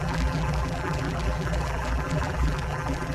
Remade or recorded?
remade